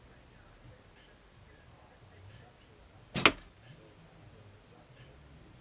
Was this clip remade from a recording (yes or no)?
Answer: no